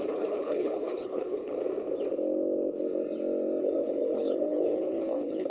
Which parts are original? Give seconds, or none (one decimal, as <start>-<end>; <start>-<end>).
1.5-3.6